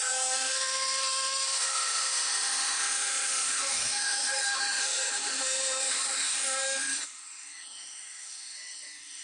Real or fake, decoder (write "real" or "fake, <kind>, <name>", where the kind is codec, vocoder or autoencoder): fake, autoencoder, DAC-VAE